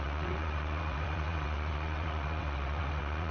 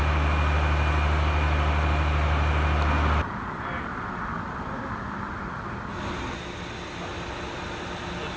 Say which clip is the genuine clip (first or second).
second